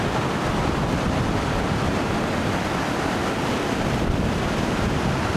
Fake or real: real